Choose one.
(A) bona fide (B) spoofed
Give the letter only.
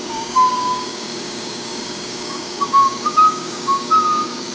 B